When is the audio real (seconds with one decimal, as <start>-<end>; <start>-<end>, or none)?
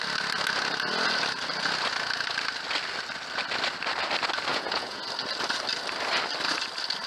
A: 0.0-4.5; 5.0-7.1